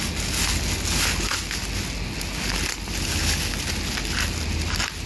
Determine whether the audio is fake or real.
real